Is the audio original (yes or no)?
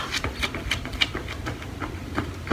yes